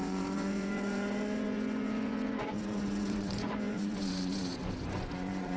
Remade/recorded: remade